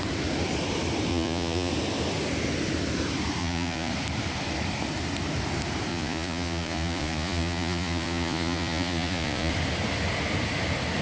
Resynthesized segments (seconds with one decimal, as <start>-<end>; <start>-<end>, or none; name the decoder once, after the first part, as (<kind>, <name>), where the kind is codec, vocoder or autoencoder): 1.1-1.7 (vocoder, Vocos); 3.4-3.9; 5.9-9.5